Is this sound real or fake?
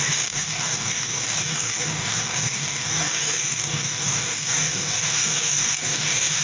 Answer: fake